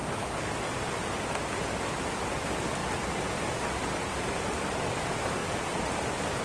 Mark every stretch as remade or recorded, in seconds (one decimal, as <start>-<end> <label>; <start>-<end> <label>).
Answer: 0.0-0.6 remade; 0.6-2.8 recorded; 2.8-3.8 remade; 3.8-6.4 recorded